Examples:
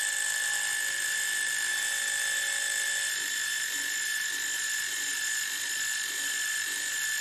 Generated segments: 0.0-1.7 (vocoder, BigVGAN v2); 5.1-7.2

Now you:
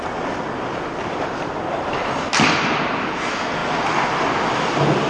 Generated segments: none

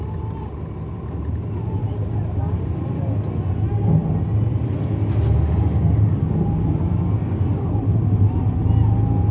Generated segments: none